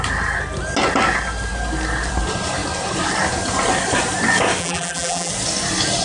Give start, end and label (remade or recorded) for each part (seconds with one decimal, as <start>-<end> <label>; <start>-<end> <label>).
0.0-4.6 recorded; 4.6-5.3 remade; 5.3-6.0 recorded